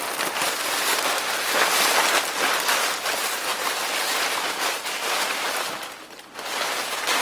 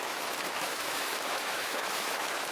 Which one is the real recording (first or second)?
first